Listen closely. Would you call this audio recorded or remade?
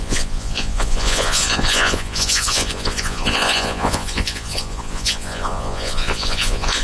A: remade